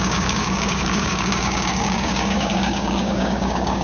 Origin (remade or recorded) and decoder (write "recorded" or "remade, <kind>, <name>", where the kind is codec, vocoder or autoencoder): remade, codec, DAC